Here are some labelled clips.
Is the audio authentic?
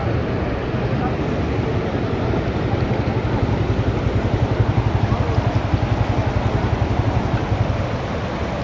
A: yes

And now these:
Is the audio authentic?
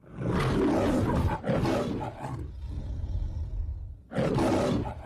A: yes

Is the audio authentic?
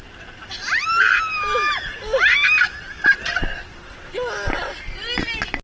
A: yes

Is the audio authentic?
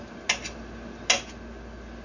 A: yes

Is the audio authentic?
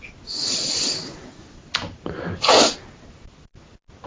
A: yes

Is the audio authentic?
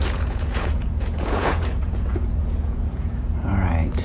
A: no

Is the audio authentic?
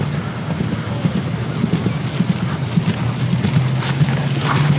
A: yes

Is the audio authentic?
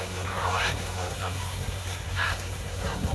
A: no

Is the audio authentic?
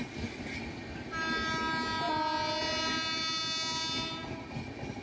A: yes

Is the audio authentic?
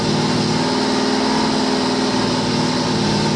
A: yes